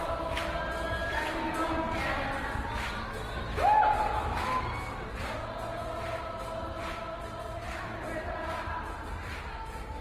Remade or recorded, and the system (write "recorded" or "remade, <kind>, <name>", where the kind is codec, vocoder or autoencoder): recorded